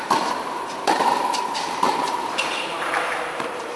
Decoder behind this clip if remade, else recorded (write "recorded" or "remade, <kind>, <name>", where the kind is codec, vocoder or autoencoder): remade, vocoder, BigVGAN v2